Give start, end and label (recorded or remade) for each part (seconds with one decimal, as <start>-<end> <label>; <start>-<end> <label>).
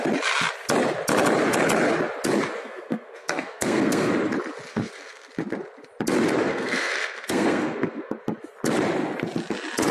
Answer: 0.0-2.6 recorded; 2.6-4.1 remade; 4.1-4.7 recorded; 4.7-5.3 remade; 5.3-6.5 recorded; 6.5-8.1 remade; 8.1-9.9 recorded